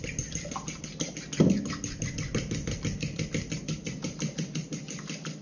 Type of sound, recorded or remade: recorded